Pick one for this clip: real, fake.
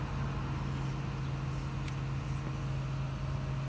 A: real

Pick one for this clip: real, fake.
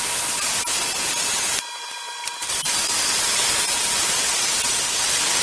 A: real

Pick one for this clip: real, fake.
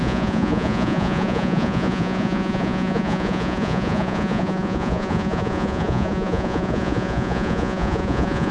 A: fake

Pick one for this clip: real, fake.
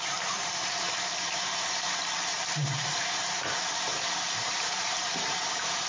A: fake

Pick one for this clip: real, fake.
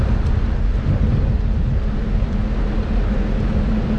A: real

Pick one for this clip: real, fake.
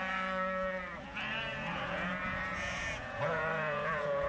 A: fake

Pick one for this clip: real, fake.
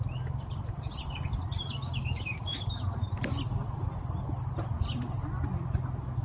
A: real